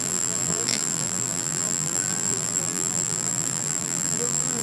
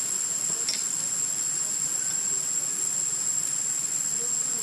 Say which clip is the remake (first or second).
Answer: first